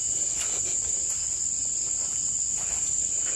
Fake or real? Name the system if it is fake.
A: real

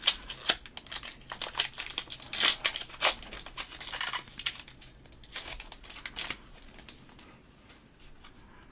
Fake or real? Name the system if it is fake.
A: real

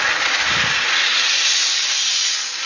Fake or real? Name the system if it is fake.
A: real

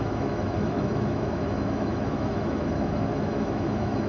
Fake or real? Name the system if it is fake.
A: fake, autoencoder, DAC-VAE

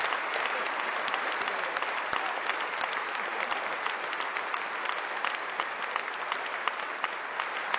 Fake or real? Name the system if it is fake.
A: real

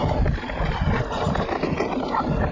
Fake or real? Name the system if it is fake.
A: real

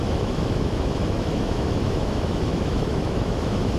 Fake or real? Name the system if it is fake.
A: fake, autoencoder, DAC-VAE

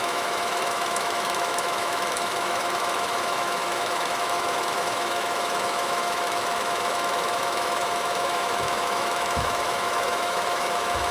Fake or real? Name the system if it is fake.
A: fake, autoencoder, DAC-VAE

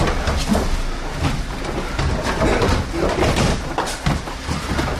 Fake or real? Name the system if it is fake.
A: real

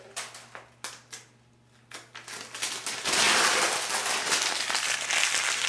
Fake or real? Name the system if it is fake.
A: real